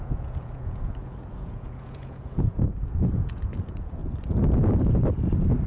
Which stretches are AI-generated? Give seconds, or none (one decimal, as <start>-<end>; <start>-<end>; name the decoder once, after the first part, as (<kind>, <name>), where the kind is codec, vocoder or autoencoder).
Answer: 0.0-4.0 (vocoder, Vocos)